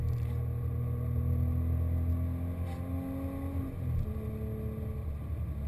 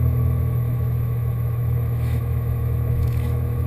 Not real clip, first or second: second